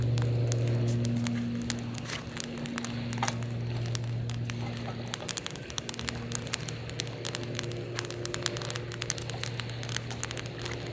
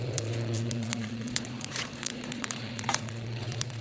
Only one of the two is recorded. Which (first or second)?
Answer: first